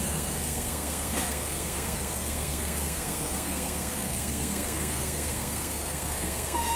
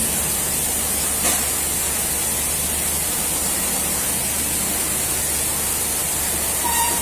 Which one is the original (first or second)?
second